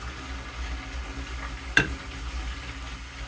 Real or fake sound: real